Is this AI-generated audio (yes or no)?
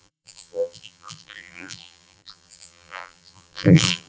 yes